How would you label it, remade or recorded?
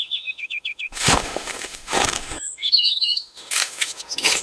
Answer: remade